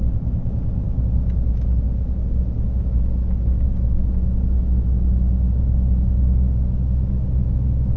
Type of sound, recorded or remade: recorded